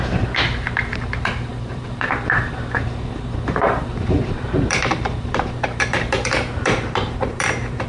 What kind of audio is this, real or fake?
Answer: fake